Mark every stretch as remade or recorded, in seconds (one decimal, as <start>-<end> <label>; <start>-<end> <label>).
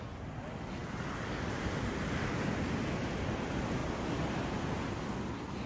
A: 0.0-5.7 recorded